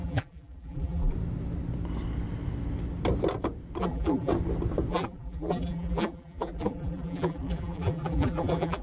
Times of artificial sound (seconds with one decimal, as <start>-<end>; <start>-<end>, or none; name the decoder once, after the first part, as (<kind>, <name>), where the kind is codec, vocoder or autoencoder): 0.0-1.1 (vocoder, BigVGAN v2); 3.8-4.3; 4.9-8.8